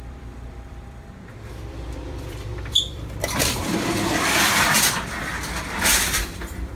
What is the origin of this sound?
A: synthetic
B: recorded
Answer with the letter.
A